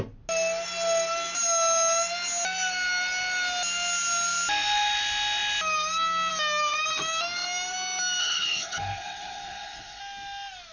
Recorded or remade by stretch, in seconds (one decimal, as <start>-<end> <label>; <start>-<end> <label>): 0.0-8.2 recorded; 8.2-10.0 remade; 10.0-10.7 recorded

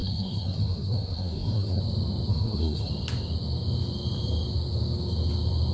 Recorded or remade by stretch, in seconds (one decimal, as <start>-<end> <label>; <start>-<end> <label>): 0.0-1.8 remade; 1.8-2.3 recorded; 2.3-2.9 remade; 2.9-5.7 recorded

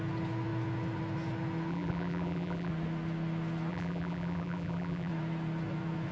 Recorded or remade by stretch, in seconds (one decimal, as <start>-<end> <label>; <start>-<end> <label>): 0.0-1.7 recorded; 1.7-2.7 remade; 2.7-3.7 recorded; 3.7-5.1 remade; 5.1-6.1 recorded